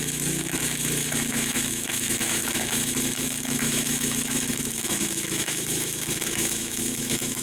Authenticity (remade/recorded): remade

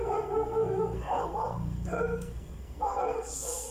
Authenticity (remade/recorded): remade